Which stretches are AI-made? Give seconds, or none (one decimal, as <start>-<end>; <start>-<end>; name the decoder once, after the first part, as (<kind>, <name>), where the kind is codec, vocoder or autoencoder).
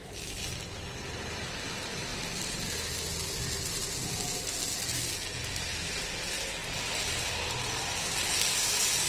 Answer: none